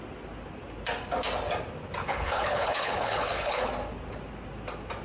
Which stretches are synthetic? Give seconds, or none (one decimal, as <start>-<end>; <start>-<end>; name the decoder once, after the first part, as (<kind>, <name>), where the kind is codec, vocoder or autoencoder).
2.0-3.7 (codec, HILCodec)